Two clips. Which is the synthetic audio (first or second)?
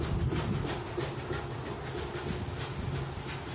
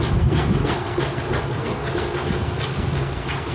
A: second